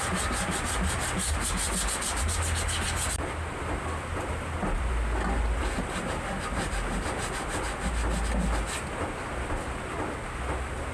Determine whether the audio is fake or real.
real